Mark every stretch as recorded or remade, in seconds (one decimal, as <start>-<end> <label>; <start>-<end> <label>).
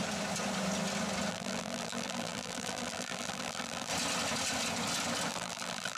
0.0-1.3 recorded; 1.3-3.9 remade; 3.9-5.3 recorded; 5.3-6.0 remade